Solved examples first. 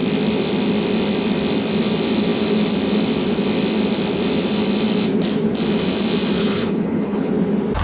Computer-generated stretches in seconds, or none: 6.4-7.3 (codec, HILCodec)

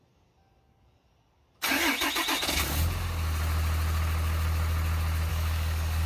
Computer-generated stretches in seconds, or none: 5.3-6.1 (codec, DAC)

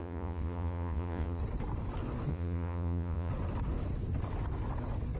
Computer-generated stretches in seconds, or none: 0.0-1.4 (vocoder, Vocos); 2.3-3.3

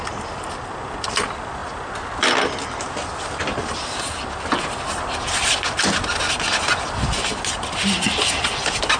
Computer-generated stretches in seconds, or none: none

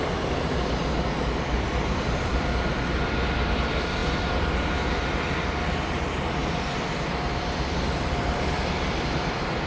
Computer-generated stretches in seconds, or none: 0.0-6.4 (vocoder, BigVGAN v2); 7.3-9.7

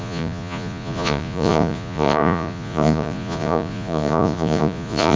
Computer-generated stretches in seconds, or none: 0.0-5.2 (vocoder, Vocos)